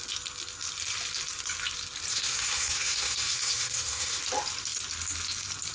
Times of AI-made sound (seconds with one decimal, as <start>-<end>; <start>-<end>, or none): 2.1-4.2